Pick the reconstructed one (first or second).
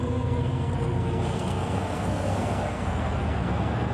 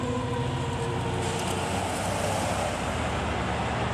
first